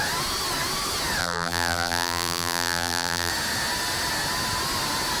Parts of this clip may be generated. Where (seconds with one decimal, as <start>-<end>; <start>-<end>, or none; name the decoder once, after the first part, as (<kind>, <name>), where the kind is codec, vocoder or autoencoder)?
1.2-3.3 (vocoder, BigVGAN v2)